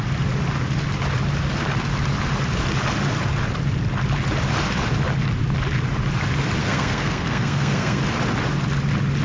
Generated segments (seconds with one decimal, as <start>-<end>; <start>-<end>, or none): 6.6-8.0